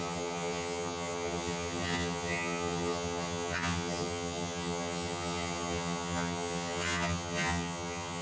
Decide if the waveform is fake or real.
fake